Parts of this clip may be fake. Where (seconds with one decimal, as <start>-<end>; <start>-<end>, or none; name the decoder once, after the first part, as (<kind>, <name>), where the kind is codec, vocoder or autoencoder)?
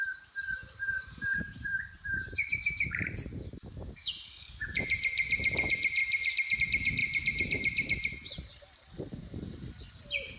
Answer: 0.6-3.0 (vocoder, BigVGAN v2); 6.0-6.6; 7.0-9.7